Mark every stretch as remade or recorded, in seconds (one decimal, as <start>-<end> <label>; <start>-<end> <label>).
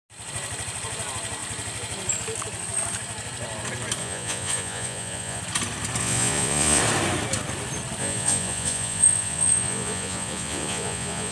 0.0-4.0 recorded; 4.0-5.4 remade; 5.4-6.0 recorded; 6.0-6.8 remade; 6.8-8.0 recorded; 8.0-11.3 remade